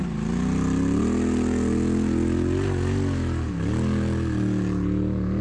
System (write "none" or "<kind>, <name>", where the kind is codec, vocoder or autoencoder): none